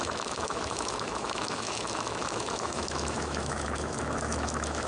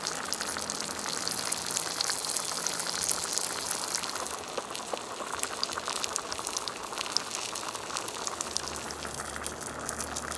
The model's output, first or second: first